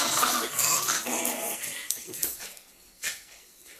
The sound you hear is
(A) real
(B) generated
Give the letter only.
B